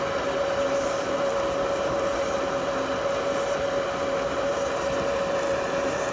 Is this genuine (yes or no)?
yes